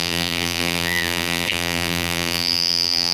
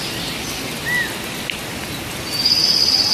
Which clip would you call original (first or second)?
second